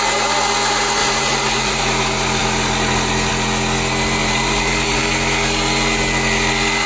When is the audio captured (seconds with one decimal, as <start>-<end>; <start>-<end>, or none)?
0.0-1.0; 1.8-4.2; 5.0-6.9